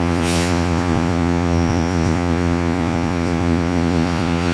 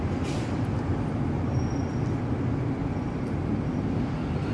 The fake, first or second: first